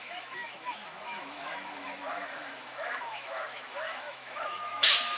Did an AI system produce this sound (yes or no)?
yes